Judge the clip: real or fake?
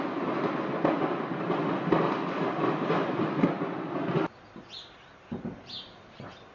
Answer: real